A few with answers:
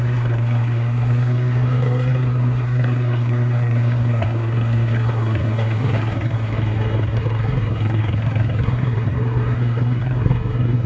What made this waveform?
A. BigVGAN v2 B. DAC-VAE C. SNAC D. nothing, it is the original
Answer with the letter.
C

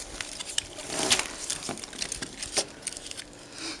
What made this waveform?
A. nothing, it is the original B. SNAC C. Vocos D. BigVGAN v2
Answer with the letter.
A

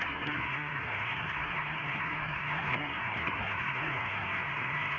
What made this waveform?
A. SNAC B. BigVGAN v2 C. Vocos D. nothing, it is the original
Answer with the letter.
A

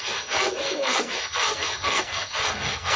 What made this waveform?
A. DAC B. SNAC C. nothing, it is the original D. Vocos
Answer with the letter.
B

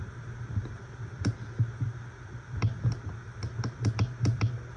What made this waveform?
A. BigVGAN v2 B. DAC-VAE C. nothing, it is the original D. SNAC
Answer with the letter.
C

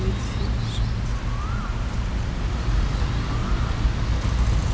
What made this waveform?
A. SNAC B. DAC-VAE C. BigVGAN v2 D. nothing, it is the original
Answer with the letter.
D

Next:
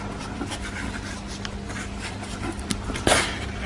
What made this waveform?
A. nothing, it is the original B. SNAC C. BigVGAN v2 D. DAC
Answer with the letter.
A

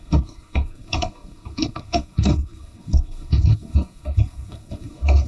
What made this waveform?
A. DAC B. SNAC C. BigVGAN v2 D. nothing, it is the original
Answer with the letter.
B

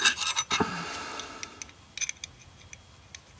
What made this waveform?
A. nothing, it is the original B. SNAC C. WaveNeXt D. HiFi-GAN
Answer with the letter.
A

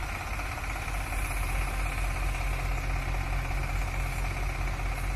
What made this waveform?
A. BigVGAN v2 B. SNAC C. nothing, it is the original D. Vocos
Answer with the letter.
C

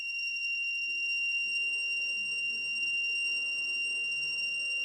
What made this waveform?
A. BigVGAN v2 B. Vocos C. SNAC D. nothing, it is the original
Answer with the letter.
C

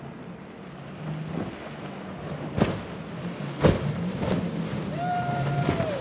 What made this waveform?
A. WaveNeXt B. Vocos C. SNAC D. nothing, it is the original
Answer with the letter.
D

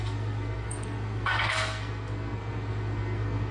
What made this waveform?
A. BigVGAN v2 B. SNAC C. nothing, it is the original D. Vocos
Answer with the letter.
B